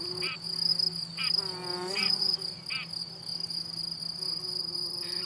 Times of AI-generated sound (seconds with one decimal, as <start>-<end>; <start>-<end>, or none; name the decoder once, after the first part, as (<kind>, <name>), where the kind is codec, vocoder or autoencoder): 2.0-2.5 (vocoder, Vocos)